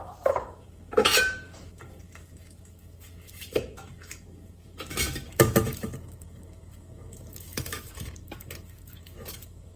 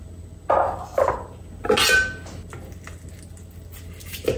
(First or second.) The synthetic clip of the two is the first